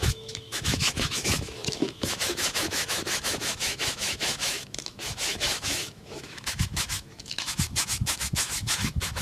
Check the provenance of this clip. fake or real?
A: fake